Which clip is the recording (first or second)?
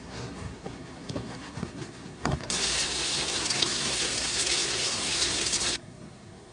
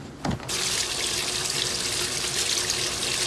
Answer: second